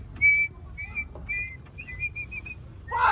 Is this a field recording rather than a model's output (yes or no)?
yes